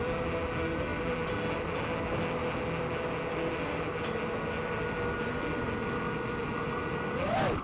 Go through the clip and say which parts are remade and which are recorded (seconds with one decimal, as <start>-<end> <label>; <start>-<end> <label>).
0.0-7.6 recorded